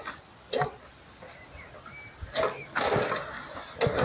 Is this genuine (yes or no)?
yes